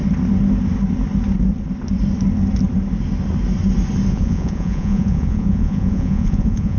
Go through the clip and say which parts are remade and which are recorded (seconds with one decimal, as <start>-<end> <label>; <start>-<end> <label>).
0.0-4.1 recorded; 4.1-6.8 remade